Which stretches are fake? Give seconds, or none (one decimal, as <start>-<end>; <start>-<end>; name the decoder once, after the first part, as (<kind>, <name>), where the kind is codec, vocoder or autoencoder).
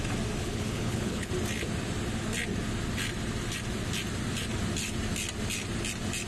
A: 0.4-1.3 (codec, HILCodec)